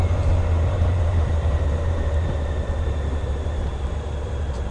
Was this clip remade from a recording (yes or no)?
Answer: yes